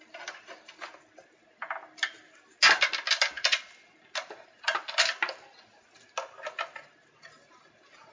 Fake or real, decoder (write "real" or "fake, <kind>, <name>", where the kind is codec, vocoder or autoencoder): real